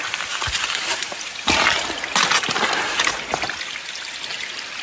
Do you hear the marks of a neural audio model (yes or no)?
no